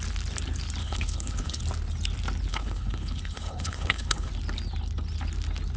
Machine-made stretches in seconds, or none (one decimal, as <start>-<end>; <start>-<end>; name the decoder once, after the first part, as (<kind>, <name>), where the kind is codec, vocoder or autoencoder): 0.8-1.6 (codec, HILCodec); 2.5-4.3